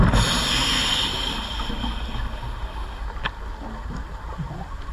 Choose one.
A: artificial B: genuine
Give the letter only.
B